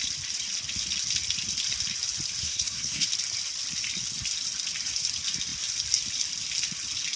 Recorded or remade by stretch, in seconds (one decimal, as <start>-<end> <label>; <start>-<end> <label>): 0.0-2.4 recorded; 2.4-3.1 remade; 3.1-7.2 recorded